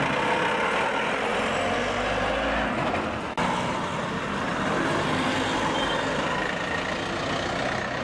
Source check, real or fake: real